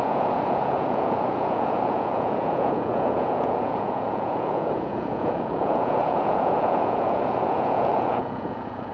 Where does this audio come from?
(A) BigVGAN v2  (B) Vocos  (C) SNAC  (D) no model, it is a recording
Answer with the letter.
B